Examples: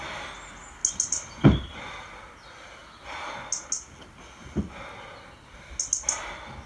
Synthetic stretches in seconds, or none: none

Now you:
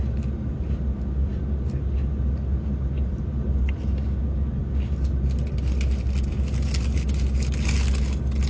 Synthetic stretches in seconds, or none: none

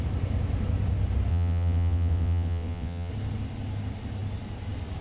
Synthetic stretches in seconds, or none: 1.3-3.1